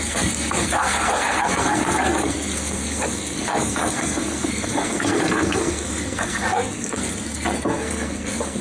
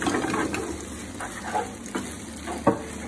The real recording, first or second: second